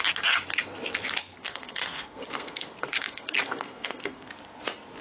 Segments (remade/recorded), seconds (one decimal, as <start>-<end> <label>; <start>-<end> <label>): 0.0-1.3 recorded; 1.3-4.3 remade; 4.3-5.0 recorded